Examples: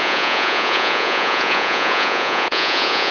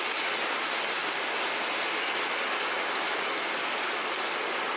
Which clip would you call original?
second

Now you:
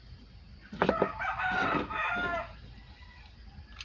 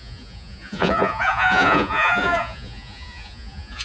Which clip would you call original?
first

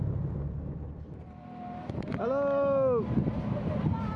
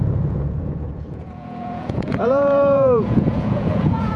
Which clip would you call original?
first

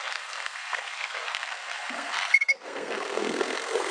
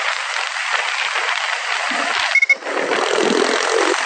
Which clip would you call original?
second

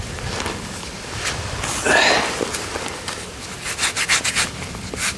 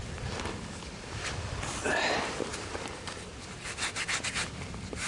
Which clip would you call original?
first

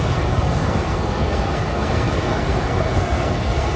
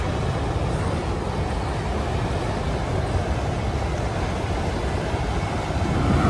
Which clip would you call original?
second